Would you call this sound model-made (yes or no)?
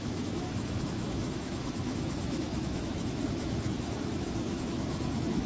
yes